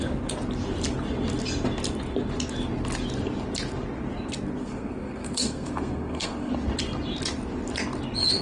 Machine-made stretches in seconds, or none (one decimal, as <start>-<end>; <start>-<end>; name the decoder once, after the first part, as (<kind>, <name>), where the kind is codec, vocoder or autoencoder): 4.6-6.5 (codec, SNAC)